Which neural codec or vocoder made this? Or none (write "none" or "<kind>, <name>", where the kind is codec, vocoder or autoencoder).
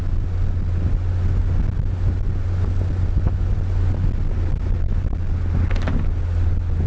none